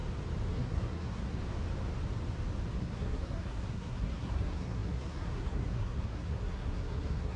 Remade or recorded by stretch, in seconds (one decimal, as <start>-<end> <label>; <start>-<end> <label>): 0.0-0.5 recorded; 0.5-1.4 remade; 1.4-2.8 recorded; 2.8-7.4 remade